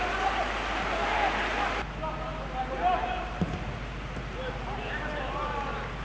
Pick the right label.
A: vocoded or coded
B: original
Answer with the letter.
B